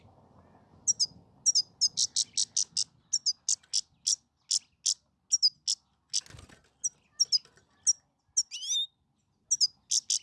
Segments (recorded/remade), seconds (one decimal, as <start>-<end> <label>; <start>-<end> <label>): 0.0-10.2 recorded